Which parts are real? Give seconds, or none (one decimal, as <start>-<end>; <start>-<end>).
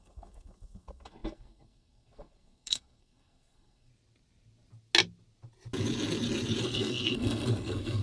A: 3.9-6.6